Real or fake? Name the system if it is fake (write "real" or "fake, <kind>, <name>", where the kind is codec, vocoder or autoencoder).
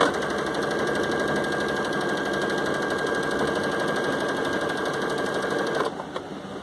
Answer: real